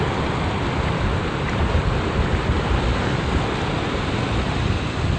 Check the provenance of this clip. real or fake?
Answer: real